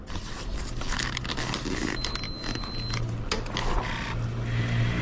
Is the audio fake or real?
real